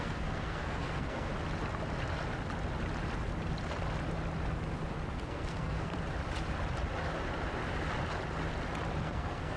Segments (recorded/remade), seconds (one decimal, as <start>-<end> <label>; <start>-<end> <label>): 0.0-1.3 remade; 1.3-5.1 recorded; 5.1-5.9 remade; 5.9-9.0 recorded; 9.0-9.6 remade